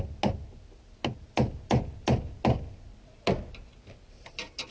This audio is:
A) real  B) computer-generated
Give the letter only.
A